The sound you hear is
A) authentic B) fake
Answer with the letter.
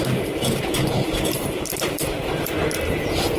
A